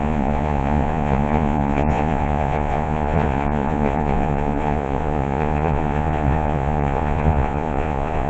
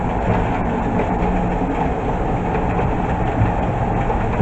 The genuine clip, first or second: second